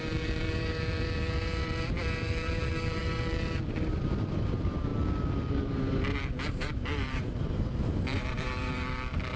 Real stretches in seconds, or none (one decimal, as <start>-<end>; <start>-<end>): 4.9-5.5